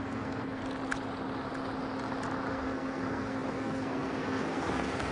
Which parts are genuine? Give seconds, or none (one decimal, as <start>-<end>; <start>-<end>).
0.6-2.5